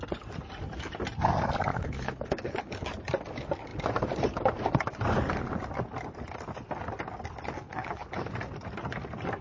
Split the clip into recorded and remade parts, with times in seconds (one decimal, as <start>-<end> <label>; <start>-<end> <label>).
0.0-1.7 recorded; 1.7-2.7 remade; 2.7-7.7 recorded; 7.7-8.3 remade; 8.3-9.4 recorded